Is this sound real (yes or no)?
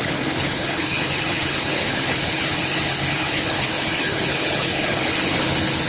no